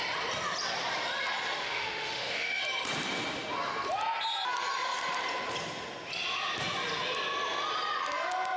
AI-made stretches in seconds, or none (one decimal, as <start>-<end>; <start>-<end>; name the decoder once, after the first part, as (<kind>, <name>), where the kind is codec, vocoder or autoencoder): 1.6-2.6 (autoencoder, DAC-VAE)